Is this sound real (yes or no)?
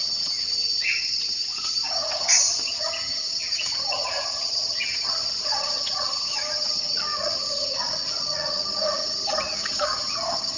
no